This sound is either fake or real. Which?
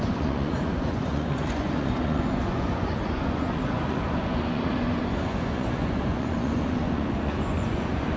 fake